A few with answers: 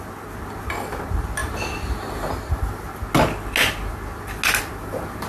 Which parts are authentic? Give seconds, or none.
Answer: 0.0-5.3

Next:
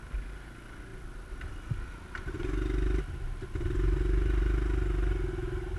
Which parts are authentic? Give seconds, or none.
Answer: 0.0-5.8

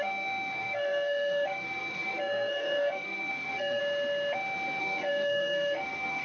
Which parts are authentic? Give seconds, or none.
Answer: 3.8-4.8

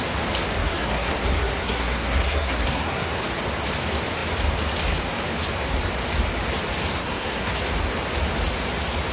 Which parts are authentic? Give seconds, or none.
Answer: 0.0-0.6; 3.2-7.0; 7.5-9.1

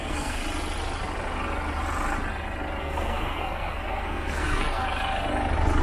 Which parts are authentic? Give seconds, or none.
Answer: 0.4-2.8; 4.8-5.8

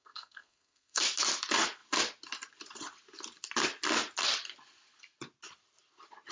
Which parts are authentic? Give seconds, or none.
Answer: 1.0-6.3

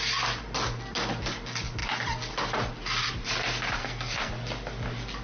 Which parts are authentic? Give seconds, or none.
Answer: 0.0-3.8; 4.3-5.2

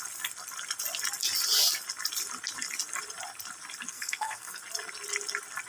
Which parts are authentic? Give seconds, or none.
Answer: 0.0-3.9; 4.6-5.7